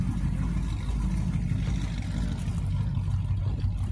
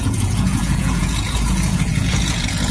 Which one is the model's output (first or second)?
second